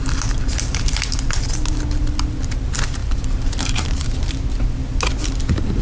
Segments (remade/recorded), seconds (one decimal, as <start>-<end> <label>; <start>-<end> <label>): 0.0-3.0 recorded; 3.0-4.1 remade; 4.1-5.8 recorded